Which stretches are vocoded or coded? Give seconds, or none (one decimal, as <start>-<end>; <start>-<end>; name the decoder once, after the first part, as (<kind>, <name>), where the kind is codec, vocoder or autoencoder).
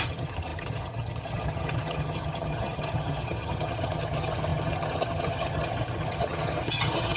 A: 0.0-7.2 (vocoder, HiFi-GAN)